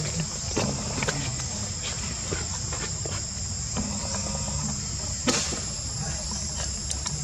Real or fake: real